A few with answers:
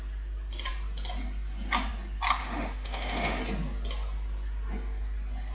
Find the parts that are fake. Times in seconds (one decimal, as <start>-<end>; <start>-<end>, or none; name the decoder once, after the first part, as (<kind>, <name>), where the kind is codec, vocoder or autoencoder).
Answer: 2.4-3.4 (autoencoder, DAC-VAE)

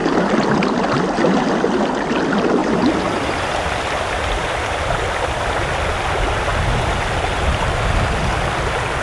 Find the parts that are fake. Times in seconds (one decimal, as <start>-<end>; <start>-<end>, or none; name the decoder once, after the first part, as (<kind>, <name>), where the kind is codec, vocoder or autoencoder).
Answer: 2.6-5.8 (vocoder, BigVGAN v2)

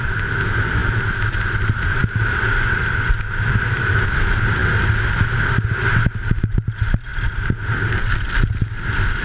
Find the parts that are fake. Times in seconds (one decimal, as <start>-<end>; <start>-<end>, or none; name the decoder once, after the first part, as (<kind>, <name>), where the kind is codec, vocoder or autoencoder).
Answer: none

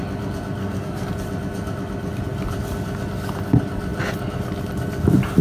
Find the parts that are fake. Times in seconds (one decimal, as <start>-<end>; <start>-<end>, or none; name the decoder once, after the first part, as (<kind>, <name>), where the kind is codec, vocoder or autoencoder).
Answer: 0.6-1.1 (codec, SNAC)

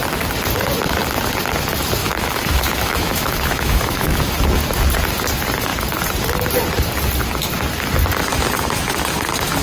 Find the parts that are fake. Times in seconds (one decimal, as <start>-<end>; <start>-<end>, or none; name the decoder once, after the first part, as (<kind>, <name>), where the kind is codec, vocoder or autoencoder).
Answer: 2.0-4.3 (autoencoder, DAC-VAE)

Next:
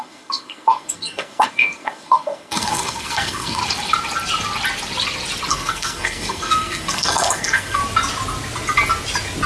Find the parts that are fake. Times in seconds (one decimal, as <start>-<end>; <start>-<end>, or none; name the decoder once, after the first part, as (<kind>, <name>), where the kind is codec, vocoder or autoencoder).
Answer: 0.0-3.6 (codec, SNAC); 5.5-7.8